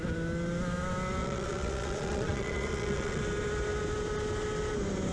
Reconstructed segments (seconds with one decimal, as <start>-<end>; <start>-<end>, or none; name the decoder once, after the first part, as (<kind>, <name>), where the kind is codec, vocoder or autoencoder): 1.2-3.2 (vocoder, Vocos)